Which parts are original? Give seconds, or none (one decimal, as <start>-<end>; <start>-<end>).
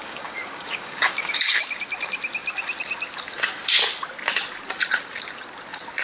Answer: 1.4-6.0